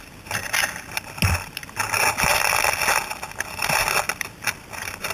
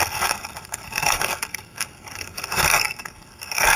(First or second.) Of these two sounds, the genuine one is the first